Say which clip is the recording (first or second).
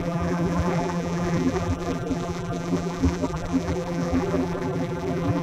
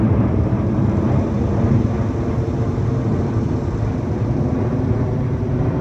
second